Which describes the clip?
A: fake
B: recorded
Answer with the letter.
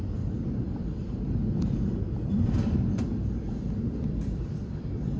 B